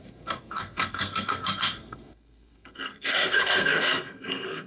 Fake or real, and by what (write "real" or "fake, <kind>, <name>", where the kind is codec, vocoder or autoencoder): fake, codec, SNAC